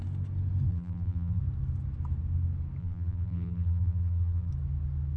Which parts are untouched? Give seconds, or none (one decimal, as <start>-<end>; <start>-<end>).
0.0-0.7; 1.4-2.8; 4.5-5.2